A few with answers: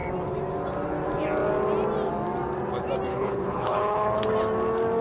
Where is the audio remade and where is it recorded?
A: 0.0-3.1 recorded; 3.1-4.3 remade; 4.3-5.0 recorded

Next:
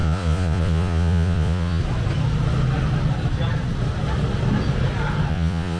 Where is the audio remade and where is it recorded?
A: 0.0-1.8 remade; 1.8-5.3 recorded; 5.3-5.8 remade

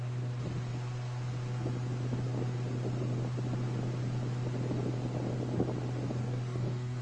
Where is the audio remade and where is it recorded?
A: 0.0-6.2 recorded; 6.2-7.0 remade

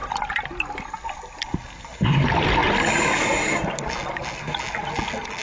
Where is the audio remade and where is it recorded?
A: 0.0-5.4 recorded

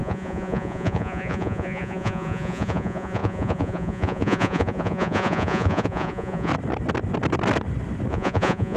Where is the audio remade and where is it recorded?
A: 0.0-6.5 remade; 6.5-8.1 recorded; 8.1-8.8 remade

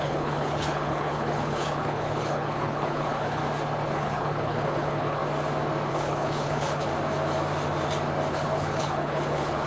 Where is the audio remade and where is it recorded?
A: 0.0-3.4 remade; 3.4-3.9 recorded; 3.9-5.2 remade; 5.2-5.9 recorded; 5.9-6.9 remade; 6.9-8.3 recorded; 8.3-9.7 remade

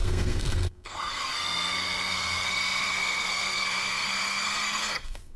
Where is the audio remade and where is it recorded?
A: 0.0-5.4 remade

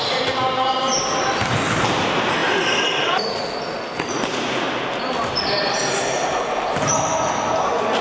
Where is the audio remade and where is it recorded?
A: 0.0-8.0 recorded